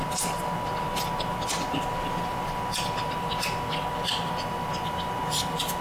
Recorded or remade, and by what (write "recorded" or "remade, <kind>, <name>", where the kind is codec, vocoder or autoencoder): recorded